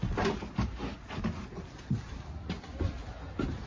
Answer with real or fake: real